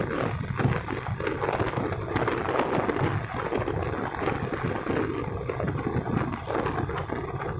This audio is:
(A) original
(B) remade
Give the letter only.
A